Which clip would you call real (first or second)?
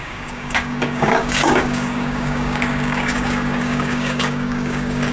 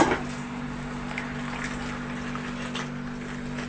second